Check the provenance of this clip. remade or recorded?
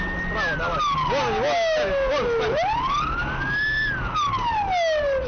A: recorded